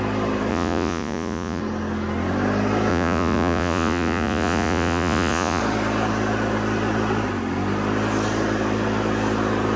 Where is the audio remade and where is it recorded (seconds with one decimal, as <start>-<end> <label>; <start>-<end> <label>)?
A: 0.0-0.5 recorded; 0.5-1.6 remade; 1.6-2.9 recorded; 2.9-5.6 remade; 5.6-9.8 recorded